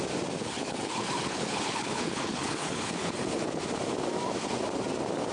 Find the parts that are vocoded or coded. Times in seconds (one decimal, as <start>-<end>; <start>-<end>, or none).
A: 0.4-3.6